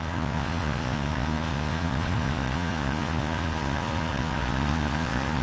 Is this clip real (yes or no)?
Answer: no